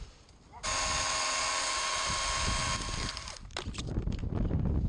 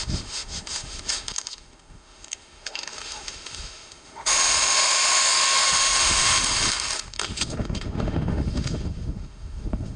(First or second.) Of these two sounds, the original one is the first